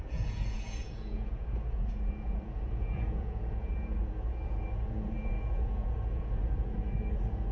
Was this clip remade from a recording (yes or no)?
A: yes